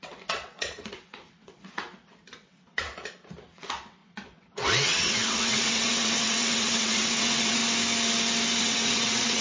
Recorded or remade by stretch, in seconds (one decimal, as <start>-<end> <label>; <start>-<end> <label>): 0.0-2.9 remade; 2.9-3.5 recorded; 3.5-7.6 remade; 7.6-8.6 recorded; 8.6-9.4 remade